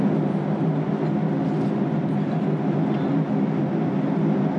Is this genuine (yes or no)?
yes